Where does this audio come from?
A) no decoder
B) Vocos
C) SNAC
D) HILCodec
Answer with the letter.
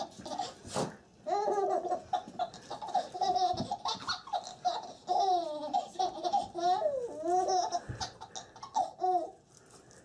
A